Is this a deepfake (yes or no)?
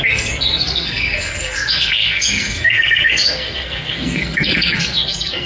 yes